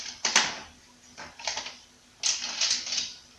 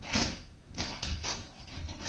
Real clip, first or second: first